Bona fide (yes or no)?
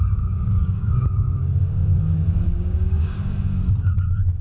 no